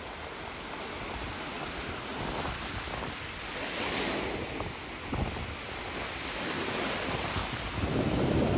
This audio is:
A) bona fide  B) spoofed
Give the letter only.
A